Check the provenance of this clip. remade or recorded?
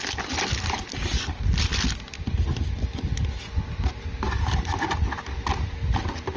recorded